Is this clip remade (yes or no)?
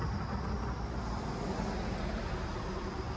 no